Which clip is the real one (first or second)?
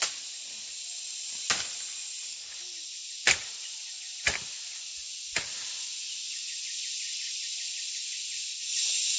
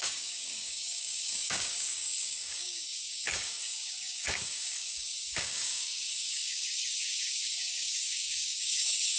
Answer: first